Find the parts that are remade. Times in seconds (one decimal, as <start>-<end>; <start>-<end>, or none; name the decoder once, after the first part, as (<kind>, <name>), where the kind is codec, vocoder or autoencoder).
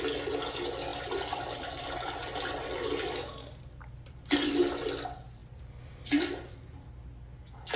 0.9-3.2 (vocoder, BigVGAN v2); 5.4-6.6